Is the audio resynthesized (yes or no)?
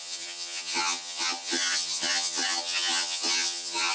yes